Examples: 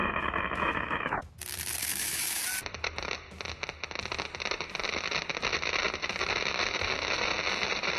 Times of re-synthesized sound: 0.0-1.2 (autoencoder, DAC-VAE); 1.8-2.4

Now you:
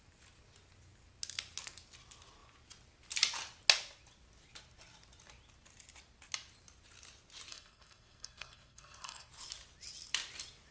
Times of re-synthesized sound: 7.5-9.3 (codec, SNAC)

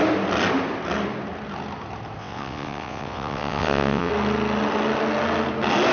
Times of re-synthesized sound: 2.2-4.1 (vocoder, WaveNeXt)

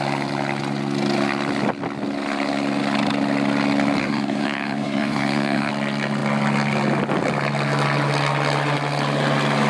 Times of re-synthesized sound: 4.0-5.7 (codec, SNAC)

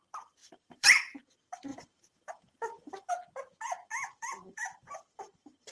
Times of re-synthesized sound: 0.4-1.2 (vocoder, BigVGAN v2); 1.7-3.1; 3.9-5.7

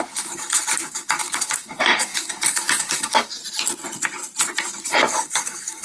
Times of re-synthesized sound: 0.0-3.4 (codec, DAC); 4.7-5.8